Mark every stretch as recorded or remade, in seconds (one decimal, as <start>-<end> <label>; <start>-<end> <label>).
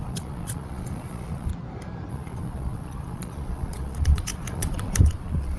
0.0-1.5 remade; 1.5-2.1 recorded; 2.1-5.6 remade